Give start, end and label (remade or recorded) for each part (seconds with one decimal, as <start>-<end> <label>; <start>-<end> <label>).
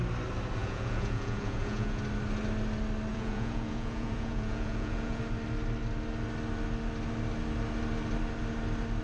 0.0-0.6 recorded; 0.6-2.0 remade; 2.0-3.1 recorded; 3.1-5.2 remade; 5.2-9.0 recorded